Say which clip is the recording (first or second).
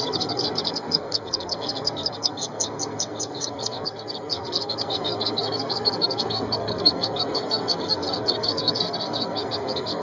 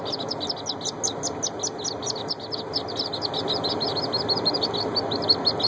second